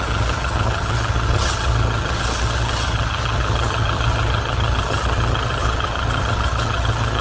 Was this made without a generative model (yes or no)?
no